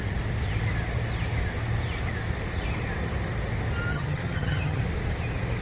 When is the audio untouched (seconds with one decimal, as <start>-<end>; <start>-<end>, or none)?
0.0-3.9; 4.8-5.6